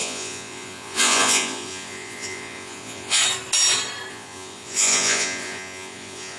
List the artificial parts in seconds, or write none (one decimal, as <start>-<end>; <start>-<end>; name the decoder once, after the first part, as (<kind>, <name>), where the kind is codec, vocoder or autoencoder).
0.0-3.2 (vocoder, Vocos); 4.1-6.4